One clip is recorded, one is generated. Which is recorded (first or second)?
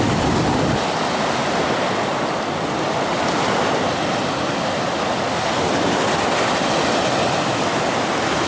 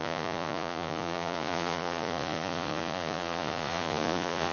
first